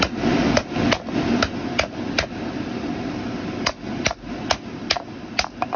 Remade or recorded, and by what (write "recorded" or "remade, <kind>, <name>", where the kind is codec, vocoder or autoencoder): recorded